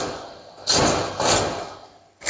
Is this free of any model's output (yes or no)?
yes